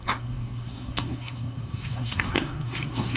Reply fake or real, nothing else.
fake